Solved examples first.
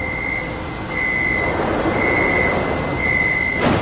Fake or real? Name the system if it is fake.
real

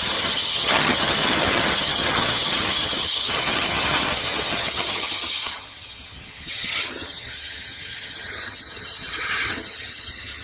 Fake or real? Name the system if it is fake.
fake, vocoder, HiFi-GAN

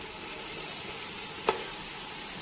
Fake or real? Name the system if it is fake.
real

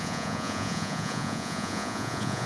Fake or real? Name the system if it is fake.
fake, vocoder, Vocos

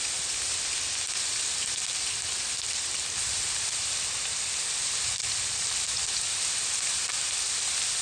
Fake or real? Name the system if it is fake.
real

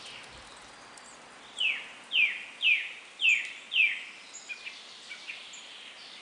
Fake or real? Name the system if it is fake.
real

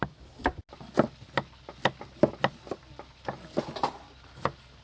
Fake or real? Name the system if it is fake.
real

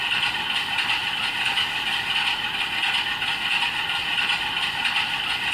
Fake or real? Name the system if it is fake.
real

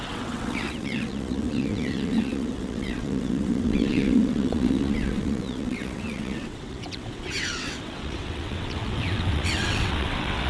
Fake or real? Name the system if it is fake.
fake, vocoder, WaveNeXt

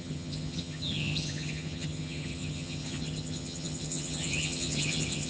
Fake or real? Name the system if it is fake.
fake, vocoder, HiFi-GAN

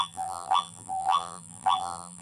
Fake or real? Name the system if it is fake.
fake, vocoder, BigVGAN v2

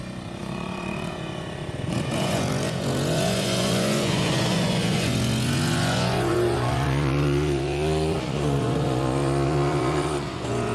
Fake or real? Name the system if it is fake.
fake, vocoder, Vocos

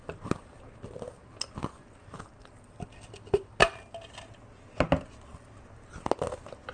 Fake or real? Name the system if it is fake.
real